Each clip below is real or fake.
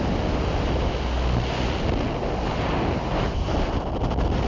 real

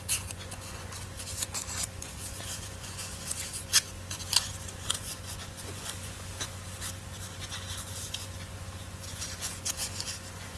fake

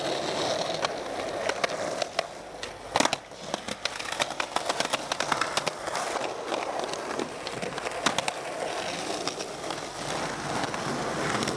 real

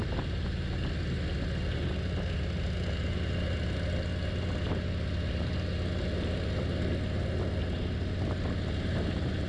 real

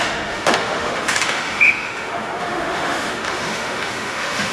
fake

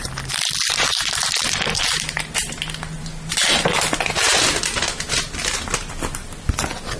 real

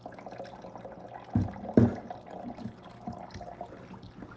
real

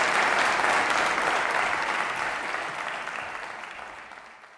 real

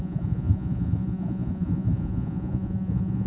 fake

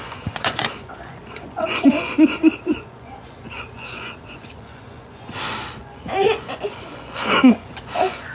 fake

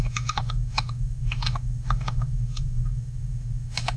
fake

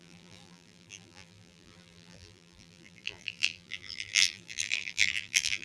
fake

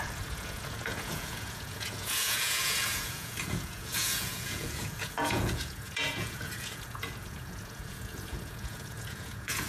fake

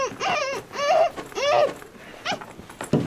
real